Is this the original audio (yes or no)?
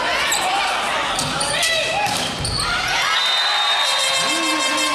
yes